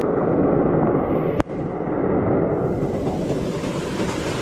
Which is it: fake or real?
real